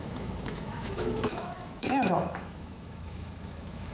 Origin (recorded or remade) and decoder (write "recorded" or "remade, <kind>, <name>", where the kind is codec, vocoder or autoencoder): remade, autoencoder, DAC-VAE